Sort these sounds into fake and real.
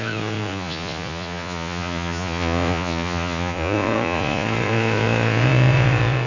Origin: fake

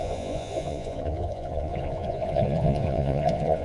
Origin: fake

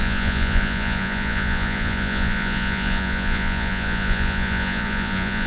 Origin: fake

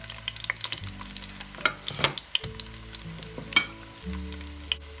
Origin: real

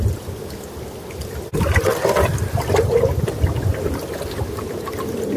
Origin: real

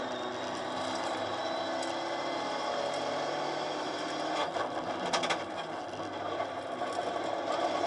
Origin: real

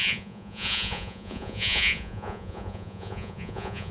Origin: fake